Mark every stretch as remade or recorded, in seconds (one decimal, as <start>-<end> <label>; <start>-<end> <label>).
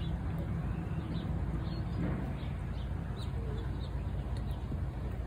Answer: 0.0-5.3 recorded